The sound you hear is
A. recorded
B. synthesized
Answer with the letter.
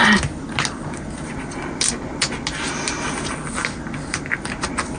A